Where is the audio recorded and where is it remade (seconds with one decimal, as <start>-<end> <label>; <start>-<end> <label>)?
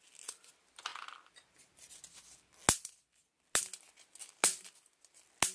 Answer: 0.0-5.5 recorded